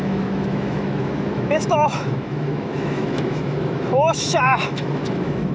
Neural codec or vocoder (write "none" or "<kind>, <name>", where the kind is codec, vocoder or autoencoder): autoencoder, DAC-VAE